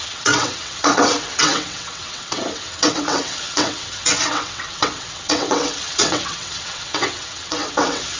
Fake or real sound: fake